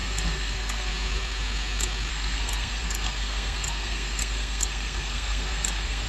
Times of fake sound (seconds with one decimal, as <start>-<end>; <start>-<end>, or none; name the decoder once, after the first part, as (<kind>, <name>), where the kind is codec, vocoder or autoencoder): 0.0-0.9 (codec, SNAC); 2.1-6.1